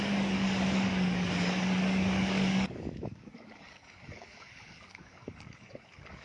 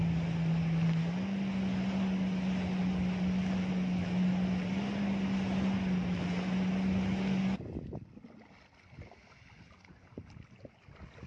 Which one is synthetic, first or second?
first